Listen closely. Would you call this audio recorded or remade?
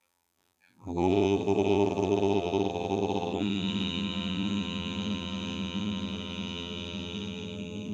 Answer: remade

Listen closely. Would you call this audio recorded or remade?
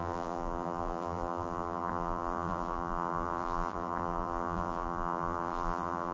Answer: remade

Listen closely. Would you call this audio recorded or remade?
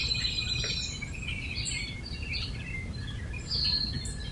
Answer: recorded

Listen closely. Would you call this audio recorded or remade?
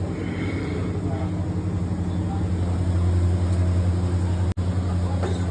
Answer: recorded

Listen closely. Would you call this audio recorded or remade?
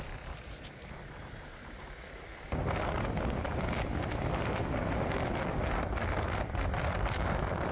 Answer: remade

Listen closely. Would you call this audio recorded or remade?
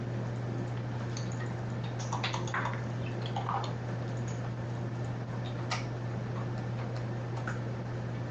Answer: recorded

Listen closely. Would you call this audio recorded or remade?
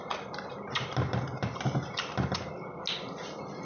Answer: recorded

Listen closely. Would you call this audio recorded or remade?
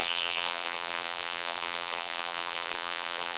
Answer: remade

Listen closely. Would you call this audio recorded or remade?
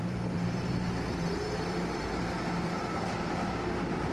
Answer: remade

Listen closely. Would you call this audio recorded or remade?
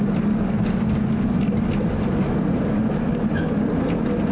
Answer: recorded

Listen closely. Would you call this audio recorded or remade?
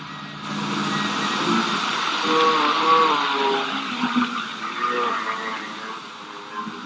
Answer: recorded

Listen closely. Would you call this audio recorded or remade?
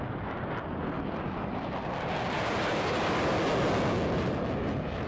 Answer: recorded